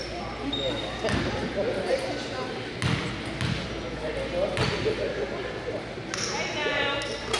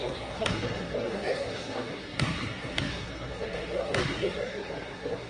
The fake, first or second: second